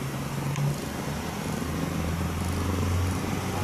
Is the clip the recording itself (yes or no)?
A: yes